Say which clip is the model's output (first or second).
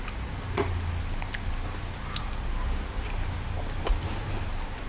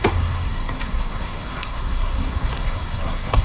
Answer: second